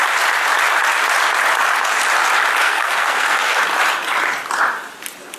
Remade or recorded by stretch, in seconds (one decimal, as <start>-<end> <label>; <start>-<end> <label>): 0.0-2.6 recorded; 2.6-3.6 remade; 3.6-5.4 recorded